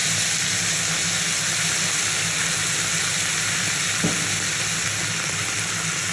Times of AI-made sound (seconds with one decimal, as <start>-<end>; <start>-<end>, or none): none